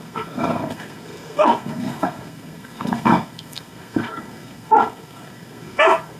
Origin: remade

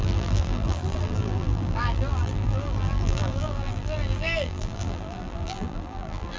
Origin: remade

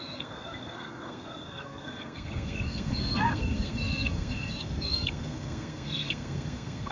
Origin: remade